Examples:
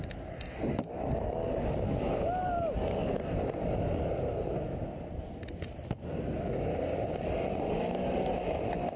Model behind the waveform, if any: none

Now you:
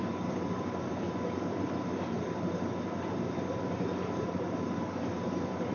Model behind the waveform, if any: vocoder, BigVGAN v2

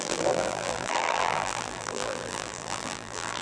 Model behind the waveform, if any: vocoder, BigVGAN v2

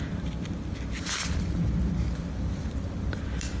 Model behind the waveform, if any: vocoder, BigVGAN v2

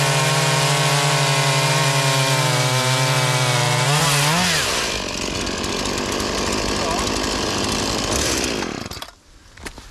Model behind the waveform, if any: none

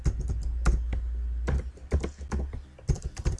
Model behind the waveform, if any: none